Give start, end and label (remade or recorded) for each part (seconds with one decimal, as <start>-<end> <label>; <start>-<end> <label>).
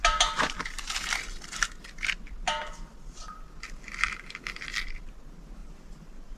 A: 0.0-5.6 recorded; 5.6-6.4 remade